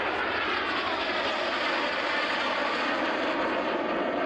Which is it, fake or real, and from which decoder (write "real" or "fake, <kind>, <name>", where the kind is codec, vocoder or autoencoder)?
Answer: real